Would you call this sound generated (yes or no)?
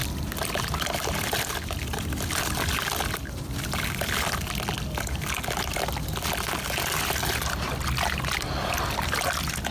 no